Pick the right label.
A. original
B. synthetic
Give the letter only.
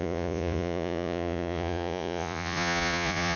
B